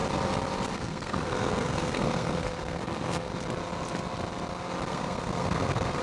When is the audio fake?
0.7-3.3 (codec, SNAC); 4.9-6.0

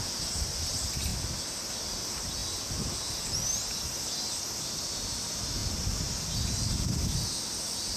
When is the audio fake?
none

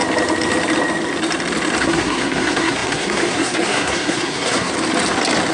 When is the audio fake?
1.8-4.7 (codec, SNAC)

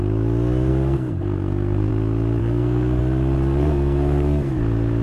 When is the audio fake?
0.7-1.9 (codec, SNAC); 2.4-3.0; 3.6-4.5

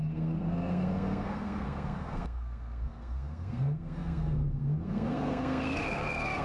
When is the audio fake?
0.0-6.4 (codec, SNAC)